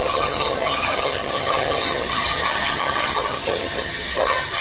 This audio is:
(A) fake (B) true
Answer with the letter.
A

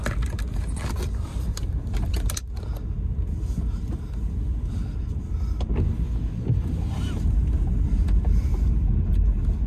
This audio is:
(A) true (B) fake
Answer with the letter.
A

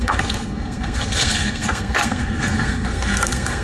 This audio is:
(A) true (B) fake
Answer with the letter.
B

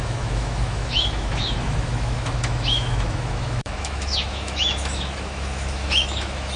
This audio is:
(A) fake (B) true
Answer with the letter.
A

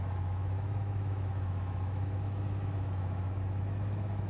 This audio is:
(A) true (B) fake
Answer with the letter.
B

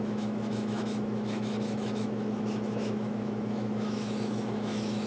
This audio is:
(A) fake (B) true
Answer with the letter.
A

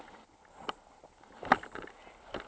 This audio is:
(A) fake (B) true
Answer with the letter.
B